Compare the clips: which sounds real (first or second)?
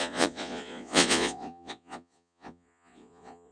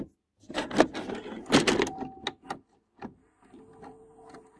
second